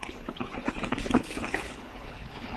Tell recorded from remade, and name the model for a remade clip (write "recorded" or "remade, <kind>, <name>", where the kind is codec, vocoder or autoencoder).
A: remade, codec, HILCodec